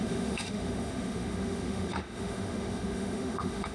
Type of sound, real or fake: fake